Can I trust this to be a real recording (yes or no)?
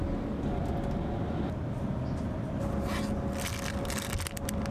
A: yes